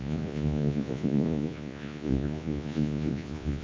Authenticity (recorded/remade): remade